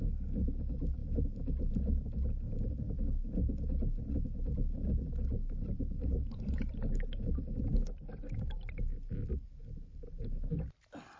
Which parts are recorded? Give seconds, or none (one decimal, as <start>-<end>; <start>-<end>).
0.0-11.2